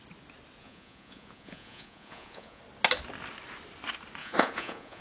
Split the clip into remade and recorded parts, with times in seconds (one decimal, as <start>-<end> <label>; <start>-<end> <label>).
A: 0.0-0.6 recorded; 0.6-2.6 remade; 2.6-4.2 recorded; 4.2-5.0 remade